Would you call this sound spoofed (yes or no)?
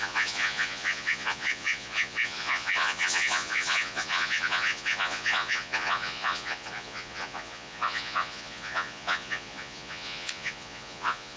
yes